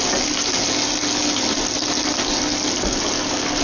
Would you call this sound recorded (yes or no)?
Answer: yes